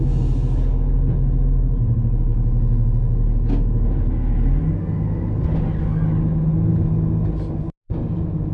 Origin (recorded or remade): recorded